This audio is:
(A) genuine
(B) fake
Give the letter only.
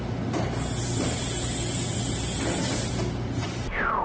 A